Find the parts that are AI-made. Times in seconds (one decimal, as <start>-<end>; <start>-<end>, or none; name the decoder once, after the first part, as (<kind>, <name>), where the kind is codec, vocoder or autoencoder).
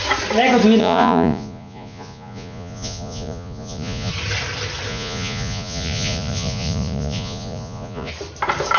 0.8-4.1 (vocoder, Vocos); 4.9-8.1